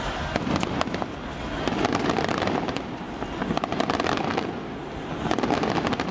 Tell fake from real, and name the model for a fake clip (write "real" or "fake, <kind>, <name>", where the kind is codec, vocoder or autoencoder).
real